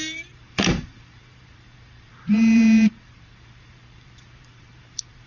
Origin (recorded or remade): remade